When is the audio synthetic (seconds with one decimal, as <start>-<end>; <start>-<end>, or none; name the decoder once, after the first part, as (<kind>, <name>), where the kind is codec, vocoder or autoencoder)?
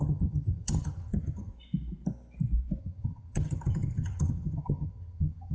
0.0-1.5 (vocoder, HiFi-GAN); 2.8-5.5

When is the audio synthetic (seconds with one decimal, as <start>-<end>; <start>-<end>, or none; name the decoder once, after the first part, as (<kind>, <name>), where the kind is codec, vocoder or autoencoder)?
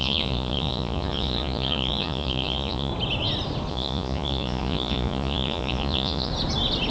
0.0-2.9 (vocoder, Vocos); 3.7-6.3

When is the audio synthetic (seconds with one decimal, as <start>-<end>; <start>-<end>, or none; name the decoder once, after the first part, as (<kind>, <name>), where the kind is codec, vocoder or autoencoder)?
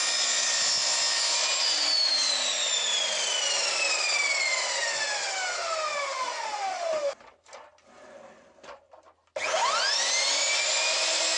none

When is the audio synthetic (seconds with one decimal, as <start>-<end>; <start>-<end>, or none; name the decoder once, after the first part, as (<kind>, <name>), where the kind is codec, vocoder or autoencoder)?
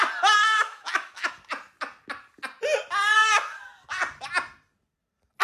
0.4-1.3 (autoencoder, DAC-VAE)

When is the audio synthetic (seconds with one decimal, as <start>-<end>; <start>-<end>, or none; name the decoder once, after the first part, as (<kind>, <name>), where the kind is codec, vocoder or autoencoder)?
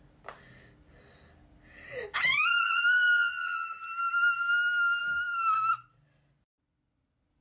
5.0-5.7 (codec, DAC)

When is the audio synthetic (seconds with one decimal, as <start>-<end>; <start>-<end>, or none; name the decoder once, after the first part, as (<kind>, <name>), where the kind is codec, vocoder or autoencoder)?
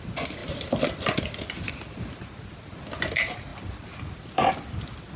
0.4-1.2 (vocoder, BigVGAN v2); 2.1-2.6; 3.5-4.5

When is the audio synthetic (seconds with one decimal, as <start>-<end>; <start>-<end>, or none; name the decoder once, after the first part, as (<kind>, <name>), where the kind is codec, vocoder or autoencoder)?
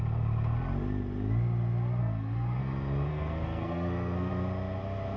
2.0-2.6 (codec, SNAC); 3.1-4.3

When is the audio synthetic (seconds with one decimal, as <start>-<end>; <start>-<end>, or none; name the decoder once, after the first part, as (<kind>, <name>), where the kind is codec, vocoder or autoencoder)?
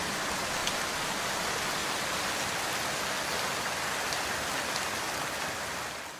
none